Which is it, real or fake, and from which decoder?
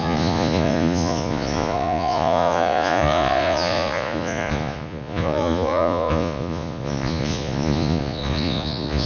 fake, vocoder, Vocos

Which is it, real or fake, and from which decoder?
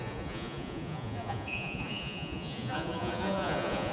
fake, vocoder, Vocos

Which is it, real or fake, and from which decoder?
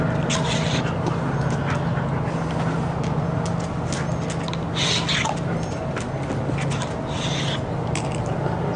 real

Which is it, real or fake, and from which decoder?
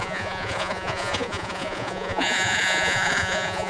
fake, vocoder, Vocos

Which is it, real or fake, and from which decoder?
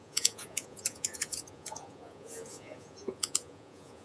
fake, vocoder, Vocos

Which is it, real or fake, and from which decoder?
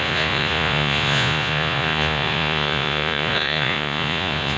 fake, vocoder, Vocos